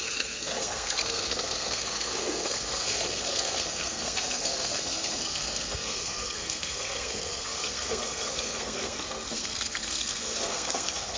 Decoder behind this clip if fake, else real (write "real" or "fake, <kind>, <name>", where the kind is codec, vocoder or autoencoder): fake, codec, SNAC